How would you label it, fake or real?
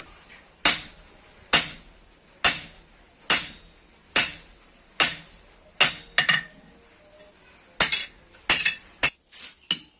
real